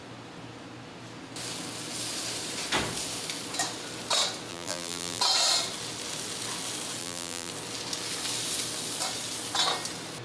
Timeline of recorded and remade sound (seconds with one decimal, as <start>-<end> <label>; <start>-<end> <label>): 0.0-4.5 recorded; 4.5-5.2 remade; 5.2-7.0 recorded; 7.0-7.5 remade; 7.5-10.2 recorded